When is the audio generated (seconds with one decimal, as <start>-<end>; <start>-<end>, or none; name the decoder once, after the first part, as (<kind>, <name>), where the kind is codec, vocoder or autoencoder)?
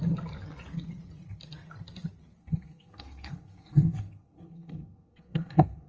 2.4-5.9 (codec, SNAC)